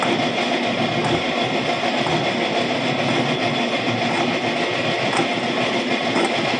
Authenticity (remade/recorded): recorded